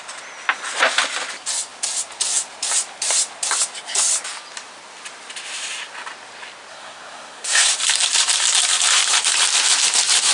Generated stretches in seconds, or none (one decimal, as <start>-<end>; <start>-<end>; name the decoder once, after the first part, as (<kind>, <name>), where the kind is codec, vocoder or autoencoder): 6.7-7.7 (codec, SNAC)